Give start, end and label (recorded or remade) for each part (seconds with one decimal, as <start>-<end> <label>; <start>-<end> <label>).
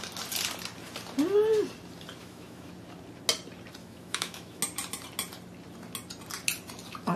0.0-2.2 recorded; 2.2-2.7 remade; 2.7-3.8 recorded; 3.8-4.6 remade; 4.6-7.2 recorded